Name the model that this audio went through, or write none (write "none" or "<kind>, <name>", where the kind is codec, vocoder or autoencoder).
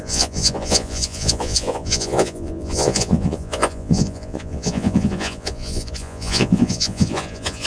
vocoder, Vocos